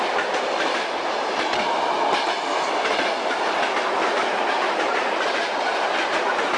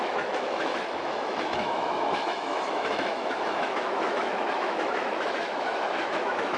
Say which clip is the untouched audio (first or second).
first